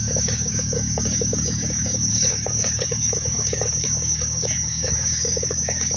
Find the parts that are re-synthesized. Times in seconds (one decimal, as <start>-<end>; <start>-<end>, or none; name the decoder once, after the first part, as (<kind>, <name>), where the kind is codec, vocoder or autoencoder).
0.0-6.0 (codec, DAC)